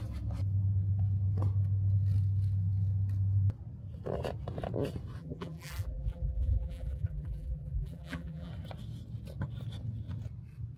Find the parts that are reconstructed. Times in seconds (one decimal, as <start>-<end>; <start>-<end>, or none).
5.2-8.5